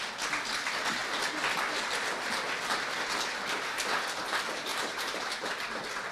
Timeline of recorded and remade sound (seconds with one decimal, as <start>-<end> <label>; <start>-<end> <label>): 0.0-4.7 recorded; 4.7-5.4 remade; 5.4-6.1 recorded